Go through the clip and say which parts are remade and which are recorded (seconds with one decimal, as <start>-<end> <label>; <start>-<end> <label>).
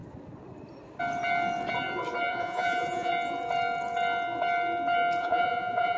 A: 0.0-2.3 recorded; 2.3-3.1 remade; 3.1-5.2 recorded; 5.2-6.0 remade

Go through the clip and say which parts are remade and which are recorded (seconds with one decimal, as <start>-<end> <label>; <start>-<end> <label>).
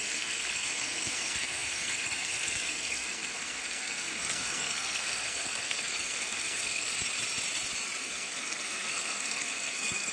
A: 0.0-6.9 remade; 6.9-8.0 recorded; 8.0-10.1 remade